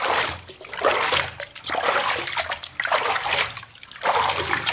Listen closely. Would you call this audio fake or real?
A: real